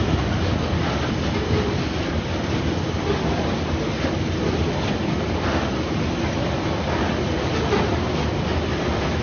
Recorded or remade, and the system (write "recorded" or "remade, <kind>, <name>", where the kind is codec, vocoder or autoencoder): recorded